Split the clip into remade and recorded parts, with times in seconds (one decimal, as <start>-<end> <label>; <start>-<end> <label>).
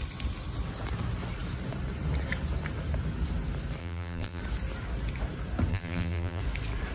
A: 0.0-3.8 recorded; 3.8-4.4 remade; 4.4-5.7 recorded; 5.7-6.4 remade; 6.4-6.9 recorded